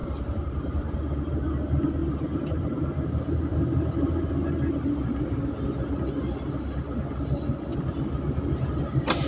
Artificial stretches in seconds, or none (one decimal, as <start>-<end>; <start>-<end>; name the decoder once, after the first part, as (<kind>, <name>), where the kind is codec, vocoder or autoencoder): 0.0-1.3 (vocoder, BigVGAN v2); 2.0-3.0; 3.5-5.6; 7.7-8.2